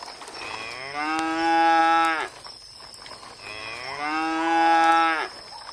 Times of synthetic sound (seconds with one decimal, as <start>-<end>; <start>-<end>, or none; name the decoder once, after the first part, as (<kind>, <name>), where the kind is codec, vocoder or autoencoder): none